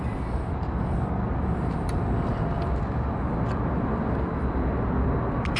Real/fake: real